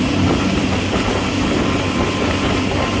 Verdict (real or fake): real